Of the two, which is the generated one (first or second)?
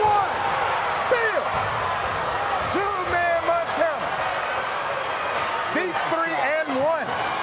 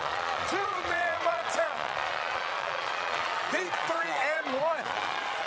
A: second